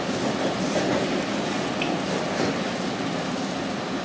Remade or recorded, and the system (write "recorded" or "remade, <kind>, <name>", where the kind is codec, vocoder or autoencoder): recorded